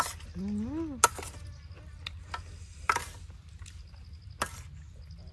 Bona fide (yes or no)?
yes